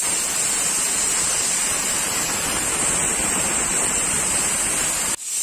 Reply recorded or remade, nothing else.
recorded